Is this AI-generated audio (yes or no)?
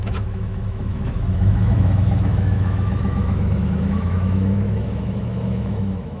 yes